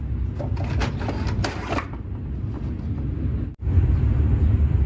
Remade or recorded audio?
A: recorded